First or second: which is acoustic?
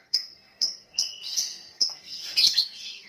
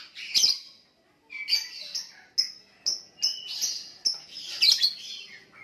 second